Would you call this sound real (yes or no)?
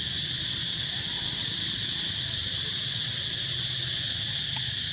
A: yes